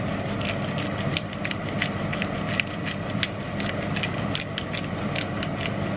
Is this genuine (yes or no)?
yes